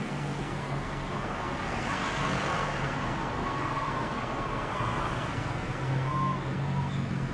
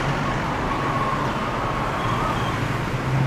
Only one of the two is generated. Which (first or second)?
first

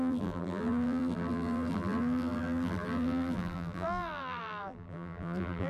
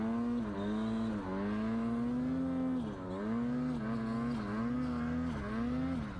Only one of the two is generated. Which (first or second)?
first